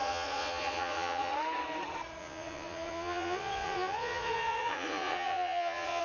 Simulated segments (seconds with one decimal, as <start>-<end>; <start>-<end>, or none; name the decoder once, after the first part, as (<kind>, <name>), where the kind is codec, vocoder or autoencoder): 0.0-1.3 (vocoder, Vocos); 2.2-6.0